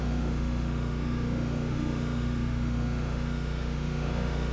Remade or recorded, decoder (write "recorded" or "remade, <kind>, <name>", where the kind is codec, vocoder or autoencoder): remade, autoencoder, DAC-VAE